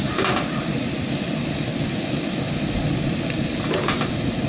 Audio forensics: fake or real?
real